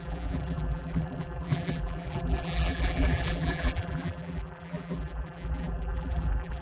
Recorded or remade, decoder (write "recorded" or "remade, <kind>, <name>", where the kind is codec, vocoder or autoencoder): remade, vocoder, BigVGAN v2